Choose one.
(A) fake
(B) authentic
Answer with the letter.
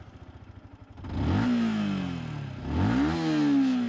B